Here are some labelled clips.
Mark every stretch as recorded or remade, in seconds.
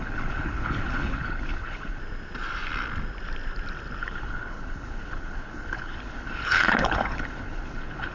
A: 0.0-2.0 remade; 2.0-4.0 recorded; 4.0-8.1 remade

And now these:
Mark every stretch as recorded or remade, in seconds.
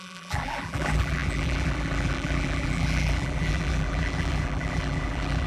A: 0.0-5.5 remade